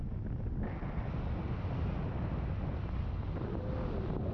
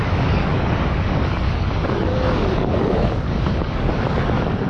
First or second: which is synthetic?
second